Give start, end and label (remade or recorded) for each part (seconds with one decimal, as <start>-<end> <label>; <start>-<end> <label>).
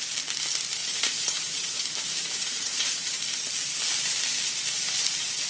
0.0-0.8 recorded; 0.8-1.8 remade; 1.8-2.2 recorded; 2.2-3.2 remade; 3.2-5.5 recorded